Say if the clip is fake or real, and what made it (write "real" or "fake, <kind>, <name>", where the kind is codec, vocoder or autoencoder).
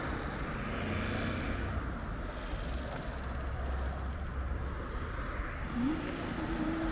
real